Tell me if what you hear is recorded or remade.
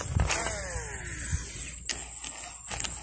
recorded